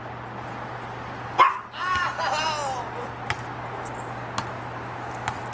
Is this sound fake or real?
real